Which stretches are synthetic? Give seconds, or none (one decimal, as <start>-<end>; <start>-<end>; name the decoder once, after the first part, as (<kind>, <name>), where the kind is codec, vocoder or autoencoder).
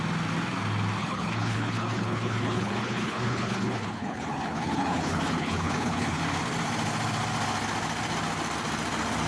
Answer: 1.0-6.2 (codec, HILCodec)